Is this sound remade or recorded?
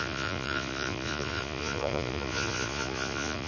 remade